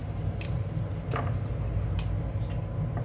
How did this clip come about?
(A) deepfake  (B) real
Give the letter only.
B